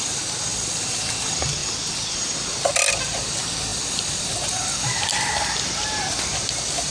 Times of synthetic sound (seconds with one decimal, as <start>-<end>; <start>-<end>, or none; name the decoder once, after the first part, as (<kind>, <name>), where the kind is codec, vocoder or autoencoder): 0.5-1.0 (vocoder, BigVGAN v2); 3.7-4.8